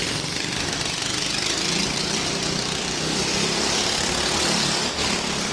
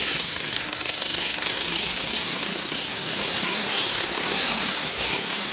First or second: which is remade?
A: second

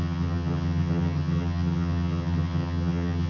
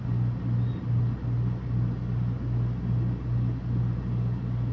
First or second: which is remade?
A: first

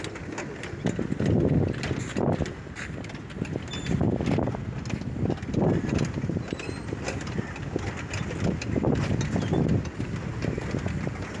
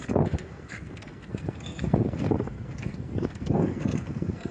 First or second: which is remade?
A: second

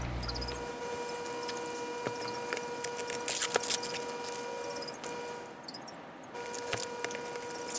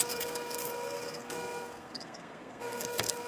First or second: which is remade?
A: second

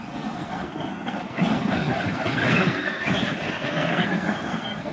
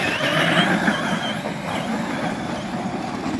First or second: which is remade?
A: first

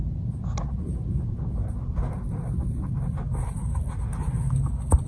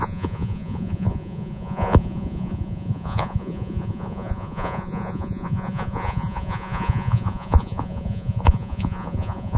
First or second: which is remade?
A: second